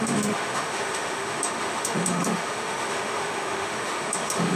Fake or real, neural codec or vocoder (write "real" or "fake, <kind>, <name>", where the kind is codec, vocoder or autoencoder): fake, autoencoder, DAC-VAE